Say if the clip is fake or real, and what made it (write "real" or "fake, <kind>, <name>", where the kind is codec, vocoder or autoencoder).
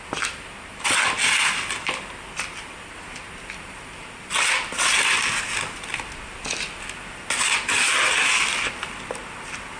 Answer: real